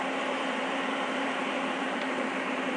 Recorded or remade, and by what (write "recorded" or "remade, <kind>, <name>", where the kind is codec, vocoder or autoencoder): remade, vocoder, BigVGAN v2